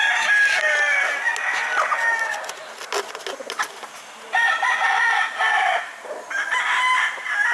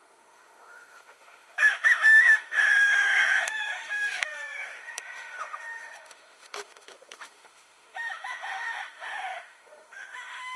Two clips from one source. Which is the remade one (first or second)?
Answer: second